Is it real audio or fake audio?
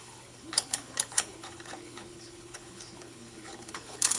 fake